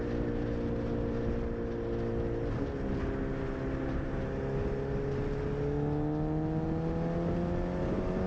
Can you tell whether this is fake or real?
real